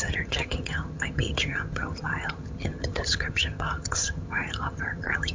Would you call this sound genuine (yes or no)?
no